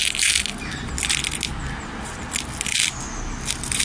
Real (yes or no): yes